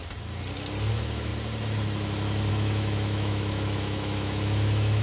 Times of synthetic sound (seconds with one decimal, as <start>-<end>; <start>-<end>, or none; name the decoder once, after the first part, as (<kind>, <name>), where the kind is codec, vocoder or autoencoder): 0.9-1.3 (autoencoder, DAC-VAE); 2.5-5.0